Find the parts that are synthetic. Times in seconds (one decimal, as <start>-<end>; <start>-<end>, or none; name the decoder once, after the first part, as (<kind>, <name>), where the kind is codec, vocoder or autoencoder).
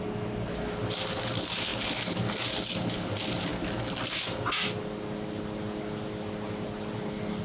none